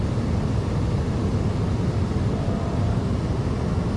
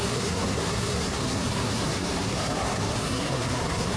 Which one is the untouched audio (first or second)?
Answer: first